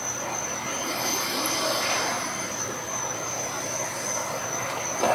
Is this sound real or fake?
real